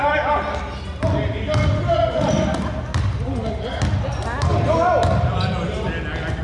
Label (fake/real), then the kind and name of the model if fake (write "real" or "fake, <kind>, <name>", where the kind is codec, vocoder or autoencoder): real